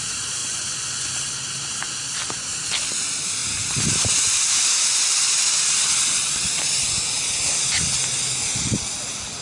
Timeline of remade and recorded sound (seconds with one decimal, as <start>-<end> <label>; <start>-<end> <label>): 0.0-0.4 recorded; 0.4-1.1 remade; 1.1-9.4 recorded